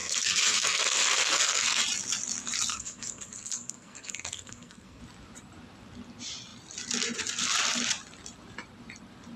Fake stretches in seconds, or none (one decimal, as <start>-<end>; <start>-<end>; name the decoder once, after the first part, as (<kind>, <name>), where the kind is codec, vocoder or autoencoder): 0.0-1.8 (codec, SNAC); 2.7-5.0